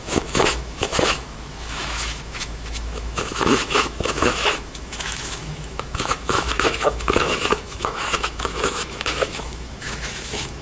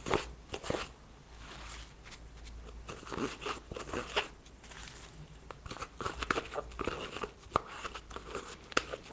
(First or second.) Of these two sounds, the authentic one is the second